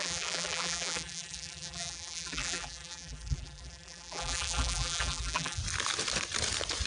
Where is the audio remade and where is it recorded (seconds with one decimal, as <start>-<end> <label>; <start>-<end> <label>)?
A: 0.0-5.6 remade; 5.6-6.9 recorded